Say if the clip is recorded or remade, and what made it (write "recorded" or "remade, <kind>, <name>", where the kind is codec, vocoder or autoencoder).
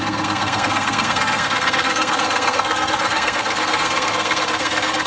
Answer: remade, codec, SNAC